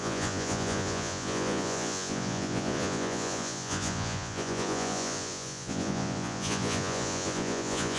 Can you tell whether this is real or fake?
fake